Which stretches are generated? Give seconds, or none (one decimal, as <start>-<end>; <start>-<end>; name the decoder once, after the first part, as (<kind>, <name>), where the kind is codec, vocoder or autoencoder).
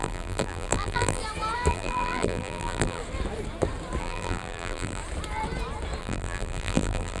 0.0-1.2 (vocoder, BigVGAN v2); 1.7-3.0; 4.0-5.0; 6.0-7.2